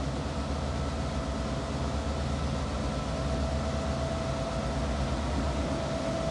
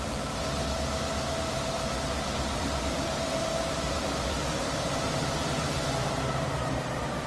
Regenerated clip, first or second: second